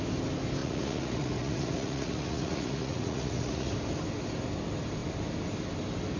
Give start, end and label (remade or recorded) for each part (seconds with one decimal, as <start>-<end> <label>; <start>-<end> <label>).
0.0-0.6 recorded; 0.6-3.7 remade; 3.7-6.2 recorded